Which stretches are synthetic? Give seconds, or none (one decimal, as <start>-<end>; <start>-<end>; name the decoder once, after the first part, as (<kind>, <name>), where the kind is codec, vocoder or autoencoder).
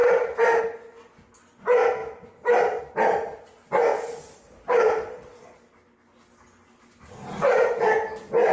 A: 0.0-0.6 (vocoder, BigVGAN v2); 2.0-2.8